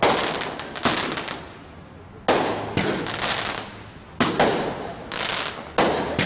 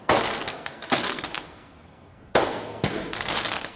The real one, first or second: first